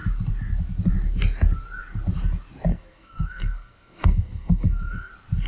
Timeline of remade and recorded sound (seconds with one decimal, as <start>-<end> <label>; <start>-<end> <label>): 0.0-2.7 recorded; 2.7-5.1 remade; 5.1-5.5 recorded